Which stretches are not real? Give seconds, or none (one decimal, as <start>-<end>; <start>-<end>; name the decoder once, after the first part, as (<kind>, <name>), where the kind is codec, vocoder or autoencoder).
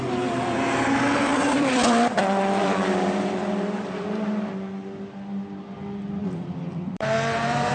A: 1.3-4.1 (vocoder, BigVGAN v2); 6.2-7.7